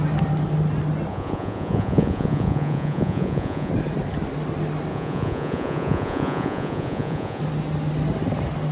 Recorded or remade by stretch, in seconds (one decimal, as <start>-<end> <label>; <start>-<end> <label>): 0.0-1.1 recorded; 1.1-3.7 remade; 3.7-4.9 recorded; 4.9-7.4 remade; 7.4-8.7 recorded